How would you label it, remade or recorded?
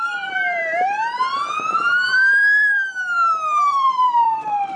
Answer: remade